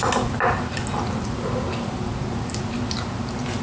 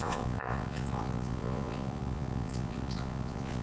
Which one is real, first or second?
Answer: first